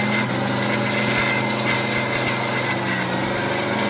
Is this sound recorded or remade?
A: recorded